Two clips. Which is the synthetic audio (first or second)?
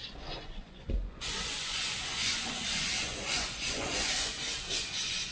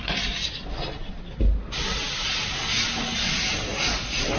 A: first